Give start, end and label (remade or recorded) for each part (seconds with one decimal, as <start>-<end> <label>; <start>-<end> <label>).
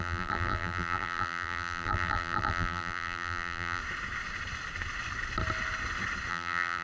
0.0-3.8 remade; 3.8-6.3 recorded; 6.3-6.8 remade